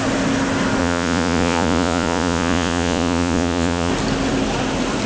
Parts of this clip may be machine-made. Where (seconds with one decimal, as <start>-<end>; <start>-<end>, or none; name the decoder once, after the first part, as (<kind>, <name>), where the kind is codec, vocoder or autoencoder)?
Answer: 0.8-3.9 (vocoder, Vocos)